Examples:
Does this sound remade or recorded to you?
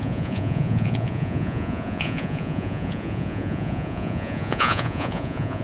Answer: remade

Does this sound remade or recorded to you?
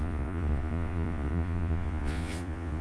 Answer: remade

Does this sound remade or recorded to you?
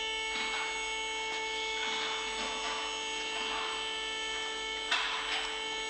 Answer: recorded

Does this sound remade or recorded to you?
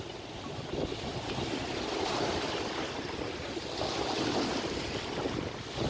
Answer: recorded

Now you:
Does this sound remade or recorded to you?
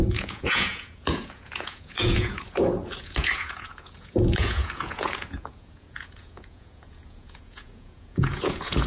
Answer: remade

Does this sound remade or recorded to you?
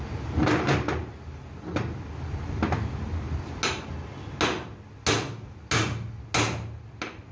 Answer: recorded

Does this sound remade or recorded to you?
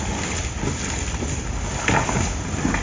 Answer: recorded